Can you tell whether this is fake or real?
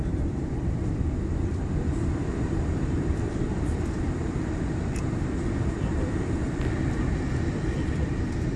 fake